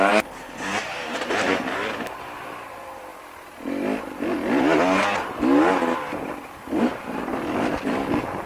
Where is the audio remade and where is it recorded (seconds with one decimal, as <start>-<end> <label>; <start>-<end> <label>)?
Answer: 0.0-3.1 remade; 3.1-6.8 recorded; 6.8-7.3 remade; 7.3-8.5 recorded